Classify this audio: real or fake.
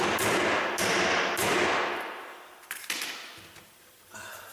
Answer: fake